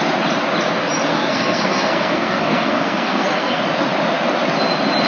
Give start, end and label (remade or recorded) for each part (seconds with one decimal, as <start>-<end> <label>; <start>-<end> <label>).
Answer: 0.0-1.1 recorded; 1.1-3.6 remade; 3.6-5.1 recorded